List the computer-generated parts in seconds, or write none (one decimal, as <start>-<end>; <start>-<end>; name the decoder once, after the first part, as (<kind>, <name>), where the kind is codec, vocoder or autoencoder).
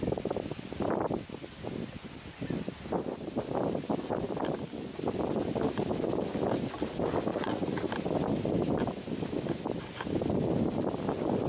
7.3-7.9 (vocoder, Vocos)